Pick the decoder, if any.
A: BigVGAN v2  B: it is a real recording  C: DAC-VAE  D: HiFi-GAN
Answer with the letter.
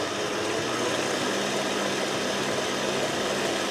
B